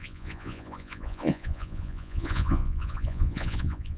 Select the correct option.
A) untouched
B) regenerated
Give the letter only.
B